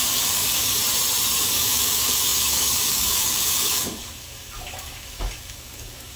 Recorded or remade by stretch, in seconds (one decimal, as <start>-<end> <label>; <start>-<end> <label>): 0.0-0.8 remade; 0.8-1.4 recorded; 1.4-6.2 remade